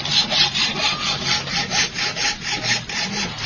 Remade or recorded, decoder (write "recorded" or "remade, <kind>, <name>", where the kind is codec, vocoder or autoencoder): recorded